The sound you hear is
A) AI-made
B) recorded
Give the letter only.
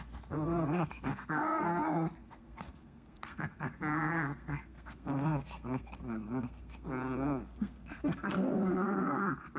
A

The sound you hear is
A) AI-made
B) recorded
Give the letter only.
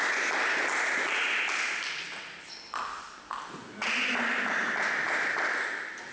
B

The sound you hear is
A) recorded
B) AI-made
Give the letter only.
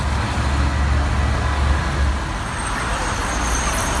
A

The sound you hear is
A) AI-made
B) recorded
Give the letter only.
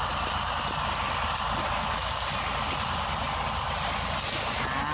B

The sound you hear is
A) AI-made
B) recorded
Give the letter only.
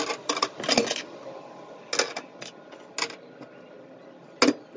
B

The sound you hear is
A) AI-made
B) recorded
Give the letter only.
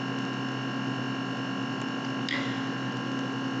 B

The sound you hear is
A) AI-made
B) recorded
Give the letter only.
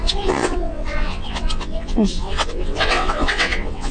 A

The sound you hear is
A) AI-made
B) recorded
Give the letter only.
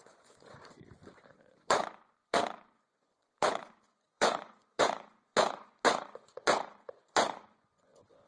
A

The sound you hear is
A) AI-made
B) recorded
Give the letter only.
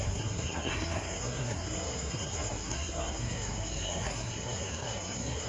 A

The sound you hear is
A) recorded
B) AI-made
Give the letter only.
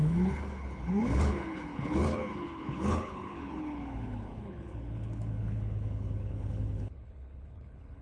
B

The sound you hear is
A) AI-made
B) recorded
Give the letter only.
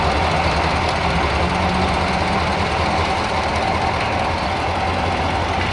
B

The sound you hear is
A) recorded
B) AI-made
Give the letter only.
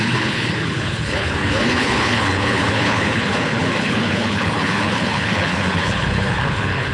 B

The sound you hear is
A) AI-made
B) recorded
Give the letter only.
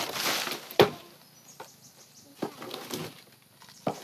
B